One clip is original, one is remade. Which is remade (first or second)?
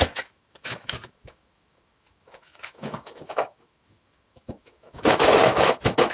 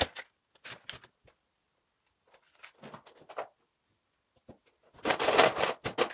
first